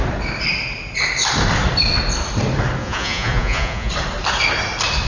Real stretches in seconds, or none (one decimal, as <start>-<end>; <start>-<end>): 0.0-2.8; 3.9-5.1